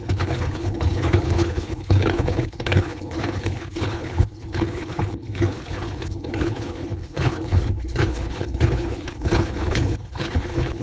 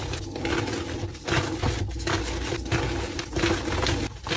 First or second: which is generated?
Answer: first